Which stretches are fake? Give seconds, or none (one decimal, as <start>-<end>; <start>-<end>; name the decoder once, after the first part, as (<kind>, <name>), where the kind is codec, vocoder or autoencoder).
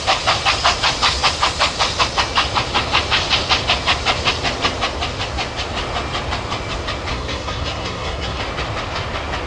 7.1-8.4 (codec, SNAC)